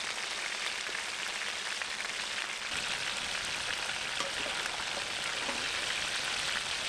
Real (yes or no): yes